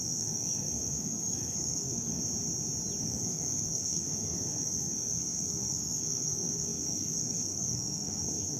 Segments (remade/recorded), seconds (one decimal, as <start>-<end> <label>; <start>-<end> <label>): 0.0-2.2 remade; 2.2-3.0 recorded; 3.0-8.6 remade